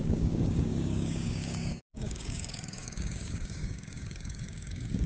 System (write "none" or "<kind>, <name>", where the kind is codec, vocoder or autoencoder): codec, DAC